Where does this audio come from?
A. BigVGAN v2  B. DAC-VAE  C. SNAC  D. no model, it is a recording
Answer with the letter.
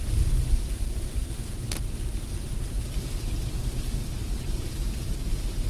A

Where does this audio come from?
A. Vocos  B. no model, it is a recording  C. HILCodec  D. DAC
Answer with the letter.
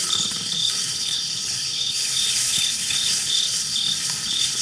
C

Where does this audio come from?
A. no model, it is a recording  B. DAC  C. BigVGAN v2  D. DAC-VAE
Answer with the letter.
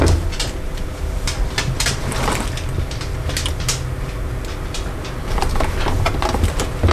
A